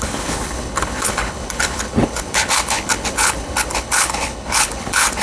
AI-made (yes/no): yes